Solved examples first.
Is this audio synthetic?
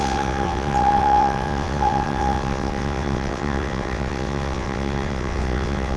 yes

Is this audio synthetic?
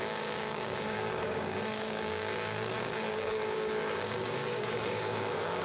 yes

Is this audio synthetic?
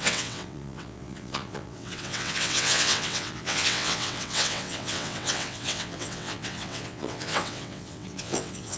yes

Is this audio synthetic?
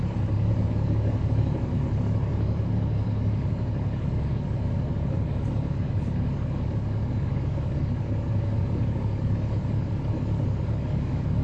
yes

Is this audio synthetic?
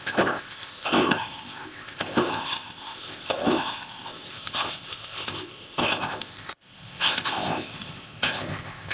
yes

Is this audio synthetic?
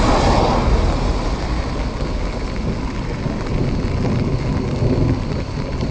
no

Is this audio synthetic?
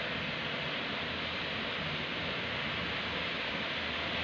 no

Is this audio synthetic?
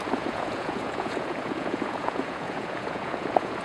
yes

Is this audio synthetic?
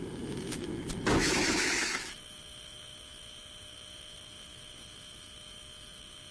yes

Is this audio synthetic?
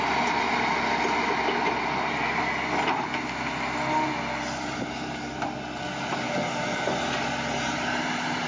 no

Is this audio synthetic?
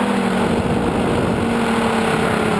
no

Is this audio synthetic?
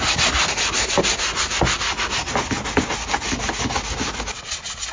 no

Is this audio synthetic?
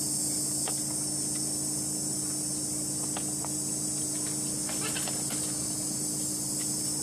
no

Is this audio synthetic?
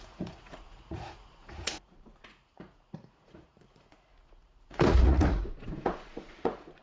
yes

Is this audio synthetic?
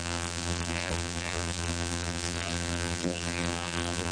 yes